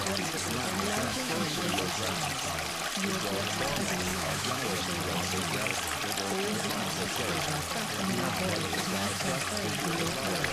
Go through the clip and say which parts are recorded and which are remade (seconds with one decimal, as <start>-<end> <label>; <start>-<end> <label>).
0.0-1.1 recorded; 1.1-1.8 remade; 1.8-4.1 recorded; 4.1-4.8 remade; 4.8-8.7 recorded; 8.7-9.4 remade; 9.4-10.5 recorded